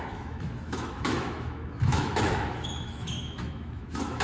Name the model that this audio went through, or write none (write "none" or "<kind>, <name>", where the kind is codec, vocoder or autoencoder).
autoencoder, DAC-VAE